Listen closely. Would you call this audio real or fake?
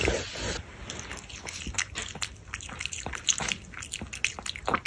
real